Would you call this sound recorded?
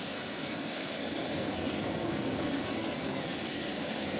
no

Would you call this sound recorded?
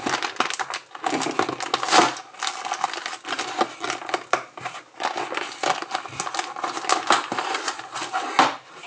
yes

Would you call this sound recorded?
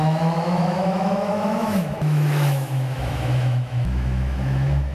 no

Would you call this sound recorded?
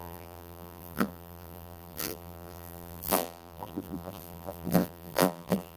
no